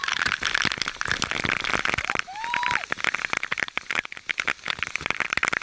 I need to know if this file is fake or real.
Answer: real